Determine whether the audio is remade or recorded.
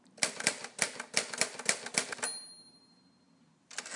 recorded